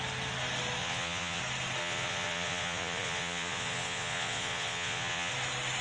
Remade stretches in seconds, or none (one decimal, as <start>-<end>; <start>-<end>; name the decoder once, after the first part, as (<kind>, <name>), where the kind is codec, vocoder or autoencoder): 0.8-1.4 (vocoder, Vocos); 1.8-5.3